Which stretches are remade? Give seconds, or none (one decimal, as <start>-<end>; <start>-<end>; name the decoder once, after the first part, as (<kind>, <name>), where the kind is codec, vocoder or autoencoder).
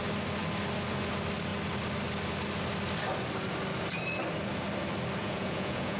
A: 5.2-6.0 (vocoder, Vocos)